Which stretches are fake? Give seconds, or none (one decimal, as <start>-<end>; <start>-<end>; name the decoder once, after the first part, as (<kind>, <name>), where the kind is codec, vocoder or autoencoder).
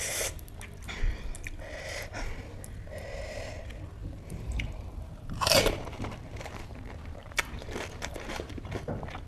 4.0-8.8 (vocoder, BigVGAN v2)